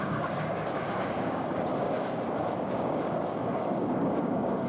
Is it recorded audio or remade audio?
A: remade